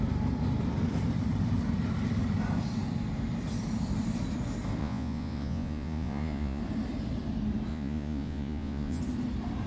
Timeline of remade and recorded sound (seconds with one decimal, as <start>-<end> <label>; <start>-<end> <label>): 0.0-4.8 recorded; 4.8-6.6 remade; 6.6-7.7 recorded; 7.7-9.0 remade; 9.0-9.7 recorded